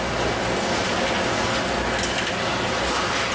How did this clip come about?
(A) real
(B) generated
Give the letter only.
A